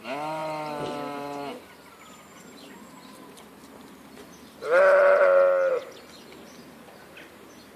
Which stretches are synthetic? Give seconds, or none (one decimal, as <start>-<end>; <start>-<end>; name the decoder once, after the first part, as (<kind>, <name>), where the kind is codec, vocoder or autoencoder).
none